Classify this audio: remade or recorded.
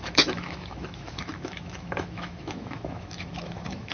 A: remade